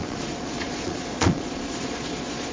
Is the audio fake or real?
fake